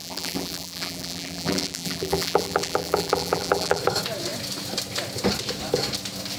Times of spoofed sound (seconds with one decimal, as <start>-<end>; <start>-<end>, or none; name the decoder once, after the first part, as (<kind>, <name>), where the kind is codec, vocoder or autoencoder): 0.0-3.8 (vocoder, BigVGAN v2)